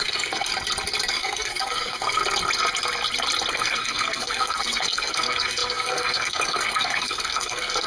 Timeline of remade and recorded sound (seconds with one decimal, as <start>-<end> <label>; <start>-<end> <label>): 0.0-0.5 remade; 0.5-1.1 recorded; 1.1-2.2 remade; 2.2-3.5 recorded; 3.5-7.9 remade